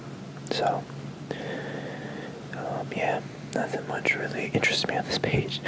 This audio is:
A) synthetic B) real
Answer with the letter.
B